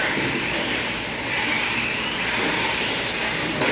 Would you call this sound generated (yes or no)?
no